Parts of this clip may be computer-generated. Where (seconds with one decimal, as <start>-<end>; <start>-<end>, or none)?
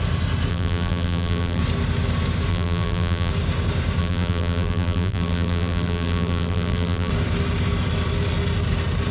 0.5-1.6; 2.5-3.3; 4.0-7.1